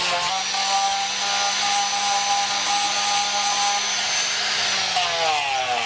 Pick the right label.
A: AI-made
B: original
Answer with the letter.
B